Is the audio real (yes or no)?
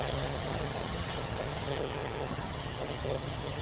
no